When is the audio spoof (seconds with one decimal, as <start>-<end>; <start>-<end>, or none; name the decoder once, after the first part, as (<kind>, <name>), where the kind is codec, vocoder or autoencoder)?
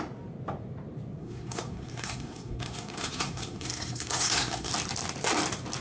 1.2-4.7 (codec, SNAC)